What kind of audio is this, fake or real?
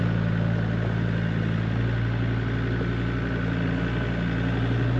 real